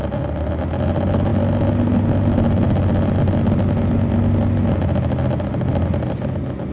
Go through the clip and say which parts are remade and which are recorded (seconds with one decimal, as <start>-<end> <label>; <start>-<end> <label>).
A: 0.0-6.7 recorded